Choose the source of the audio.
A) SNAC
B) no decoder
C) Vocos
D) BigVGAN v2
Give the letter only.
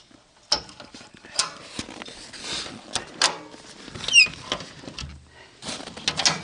B